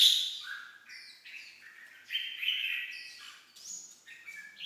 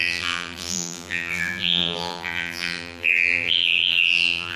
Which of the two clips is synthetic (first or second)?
second